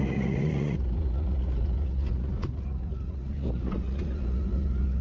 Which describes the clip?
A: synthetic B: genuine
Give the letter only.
A